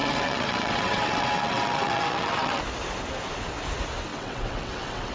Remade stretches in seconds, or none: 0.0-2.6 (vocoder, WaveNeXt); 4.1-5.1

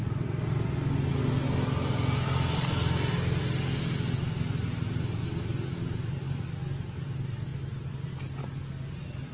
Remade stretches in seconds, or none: none

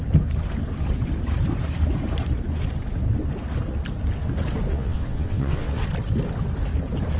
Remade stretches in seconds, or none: 4.7-5.8 (vocoder, WaveNeXt)